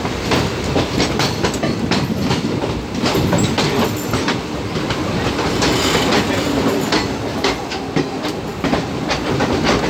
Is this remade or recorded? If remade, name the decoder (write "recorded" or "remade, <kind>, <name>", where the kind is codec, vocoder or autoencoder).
recorded